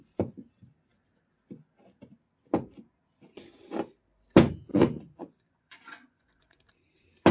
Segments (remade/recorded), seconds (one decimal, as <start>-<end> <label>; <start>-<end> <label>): 0.0-4.7 recorded; 4.7-6.6 remade; 6.6-7.3 recorded